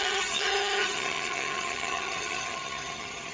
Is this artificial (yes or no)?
yes